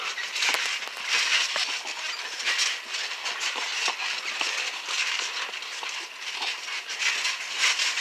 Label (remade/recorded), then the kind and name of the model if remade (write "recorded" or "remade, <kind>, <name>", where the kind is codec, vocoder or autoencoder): remade, vocoder, BigVGAN v2